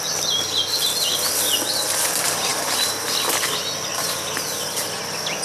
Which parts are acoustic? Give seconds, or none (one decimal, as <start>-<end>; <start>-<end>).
0.0-5.4